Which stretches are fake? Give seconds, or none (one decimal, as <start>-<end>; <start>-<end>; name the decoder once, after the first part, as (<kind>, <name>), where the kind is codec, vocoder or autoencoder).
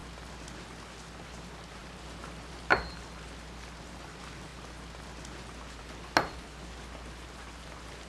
none